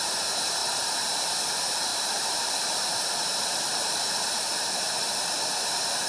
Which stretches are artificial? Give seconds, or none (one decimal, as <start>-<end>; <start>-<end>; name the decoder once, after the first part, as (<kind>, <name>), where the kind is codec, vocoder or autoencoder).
0.6-1.2 (vocoder, BigVGAN v2); 1.9-5.5